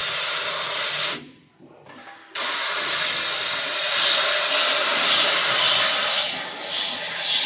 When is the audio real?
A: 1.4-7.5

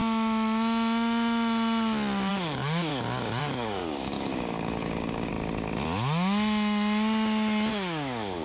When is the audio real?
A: 0.0-2.3; 2.9-3.4; 5.3-7.7

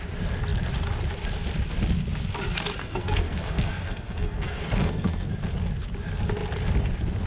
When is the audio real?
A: 0.0-2.8; 5.3-7.3

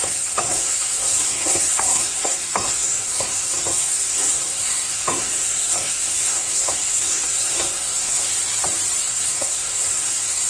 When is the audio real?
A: 8.3-9.0

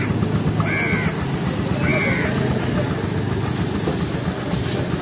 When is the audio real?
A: 0.0-5.0